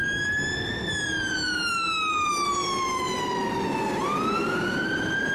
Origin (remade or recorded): recorded